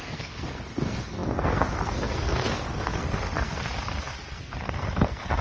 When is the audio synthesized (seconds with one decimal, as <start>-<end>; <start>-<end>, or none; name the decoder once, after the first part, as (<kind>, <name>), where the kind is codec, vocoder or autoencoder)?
0.0-5.4 (codec, SNAC)